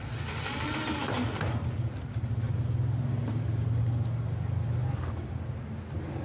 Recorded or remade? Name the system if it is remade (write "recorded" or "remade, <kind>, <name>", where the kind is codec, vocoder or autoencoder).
recorded